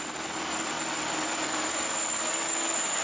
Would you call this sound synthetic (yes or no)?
no